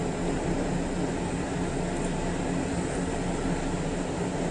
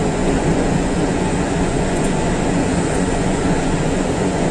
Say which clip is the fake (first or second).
second